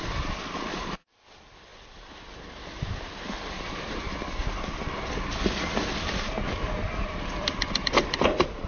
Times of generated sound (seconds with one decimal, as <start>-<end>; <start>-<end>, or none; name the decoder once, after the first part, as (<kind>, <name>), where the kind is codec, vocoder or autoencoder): none